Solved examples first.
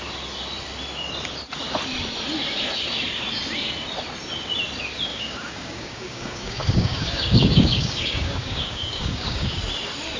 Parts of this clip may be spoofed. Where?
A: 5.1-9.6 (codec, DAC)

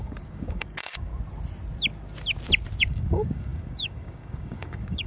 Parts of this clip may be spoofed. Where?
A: 0.0-1.1 (codec, DAC); 2.8-5.1

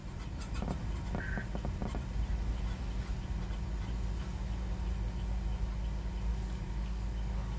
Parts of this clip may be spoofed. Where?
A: 6.3-7.6 (codec, DAC)

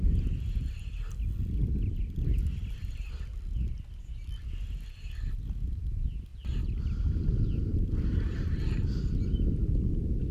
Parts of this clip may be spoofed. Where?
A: none

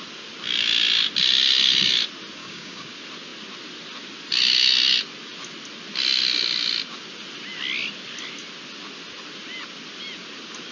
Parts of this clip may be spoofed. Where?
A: 2.4-2.9 (codec, DAC)

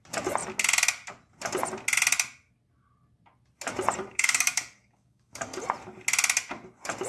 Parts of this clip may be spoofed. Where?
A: 4.1-5.6 (codec, DAC)

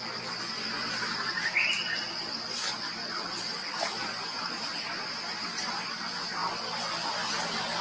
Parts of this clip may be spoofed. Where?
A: none